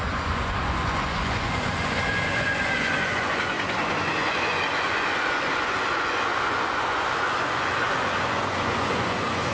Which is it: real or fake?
fake